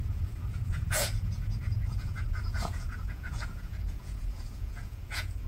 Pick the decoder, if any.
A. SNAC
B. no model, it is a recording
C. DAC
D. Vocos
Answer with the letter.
D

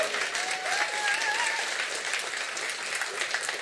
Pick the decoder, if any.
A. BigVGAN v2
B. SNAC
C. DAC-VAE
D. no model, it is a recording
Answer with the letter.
D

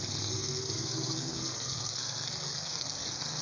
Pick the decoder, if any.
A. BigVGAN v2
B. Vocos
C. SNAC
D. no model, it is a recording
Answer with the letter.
C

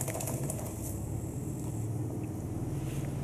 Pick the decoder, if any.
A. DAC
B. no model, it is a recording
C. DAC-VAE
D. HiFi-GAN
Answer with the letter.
B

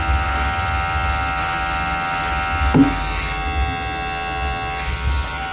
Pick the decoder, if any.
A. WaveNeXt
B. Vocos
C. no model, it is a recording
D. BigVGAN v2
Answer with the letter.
C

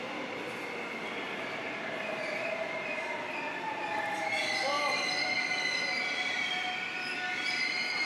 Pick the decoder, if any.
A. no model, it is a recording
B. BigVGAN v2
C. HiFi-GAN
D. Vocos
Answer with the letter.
A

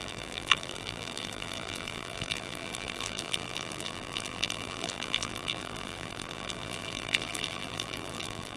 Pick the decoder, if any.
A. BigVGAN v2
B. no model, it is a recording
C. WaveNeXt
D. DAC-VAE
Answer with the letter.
A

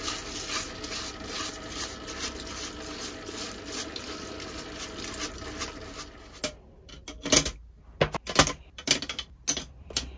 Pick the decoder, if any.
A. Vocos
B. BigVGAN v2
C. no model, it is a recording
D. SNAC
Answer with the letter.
C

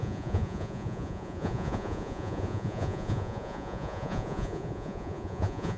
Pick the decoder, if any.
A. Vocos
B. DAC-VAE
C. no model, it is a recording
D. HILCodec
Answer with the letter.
A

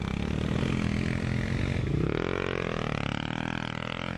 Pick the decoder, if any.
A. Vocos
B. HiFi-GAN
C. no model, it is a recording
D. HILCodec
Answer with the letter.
C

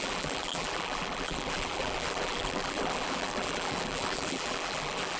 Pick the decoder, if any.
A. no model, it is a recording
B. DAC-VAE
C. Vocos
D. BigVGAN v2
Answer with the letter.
D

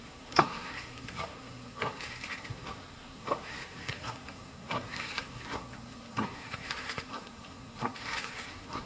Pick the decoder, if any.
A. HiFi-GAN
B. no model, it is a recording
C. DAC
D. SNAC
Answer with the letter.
D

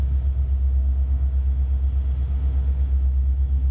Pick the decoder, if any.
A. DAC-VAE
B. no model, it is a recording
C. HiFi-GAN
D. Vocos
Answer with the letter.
B